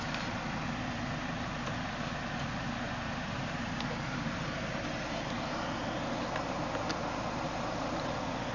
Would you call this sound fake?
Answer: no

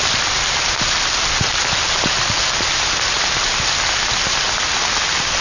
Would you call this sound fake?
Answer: no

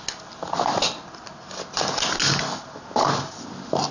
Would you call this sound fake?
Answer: no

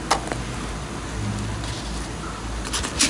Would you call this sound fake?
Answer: no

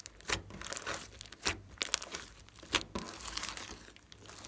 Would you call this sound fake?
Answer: no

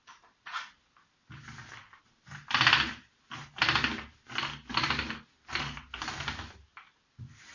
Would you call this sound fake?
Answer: no